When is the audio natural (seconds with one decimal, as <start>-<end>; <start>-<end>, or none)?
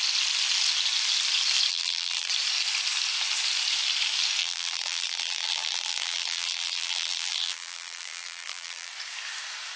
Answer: 0.0-1.7; 2.3-4.4; 8.9-9.8